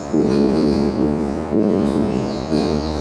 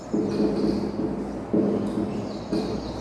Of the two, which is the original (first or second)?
second